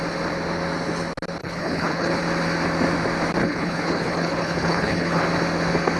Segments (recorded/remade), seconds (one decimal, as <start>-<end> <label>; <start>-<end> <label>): 0.0-1.4 recorded; 1.4-2.2 remade; 2.2-3.4 recorded; 3.4-5.2 remade; 5.2-6.0 recorded

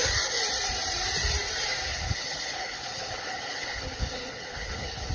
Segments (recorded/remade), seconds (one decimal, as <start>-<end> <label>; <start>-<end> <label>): 0.0-1.9 recorded; 1.9-5.1 remade

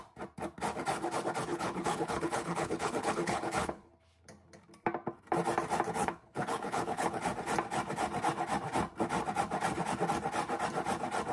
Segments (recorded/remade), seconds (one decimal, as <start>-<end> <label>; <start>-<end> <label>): 0.0-1.5 recorded; 1.5-3.9 remade; 3.9-6.0 recorded; 6.0-7.2 remade; 7.2-11.3 recorded

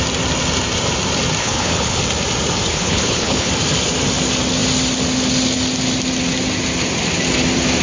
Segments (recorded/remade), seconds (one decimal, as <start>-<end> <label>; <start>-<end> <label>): 0.0-1.4 recorded; 1.4-2.0 remade; 2.0-2.7 recorded; 2.7-3.5 remade; 3.5-7.8 recorded